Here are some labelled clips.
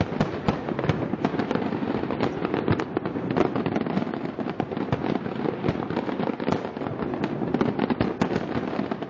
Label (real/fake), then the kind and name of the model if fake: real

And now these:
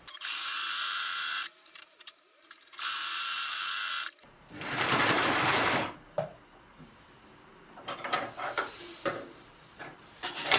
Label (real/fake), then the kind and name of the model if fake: fake, vocoder, BigVGAN v2